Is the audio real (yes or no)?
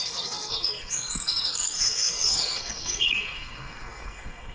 no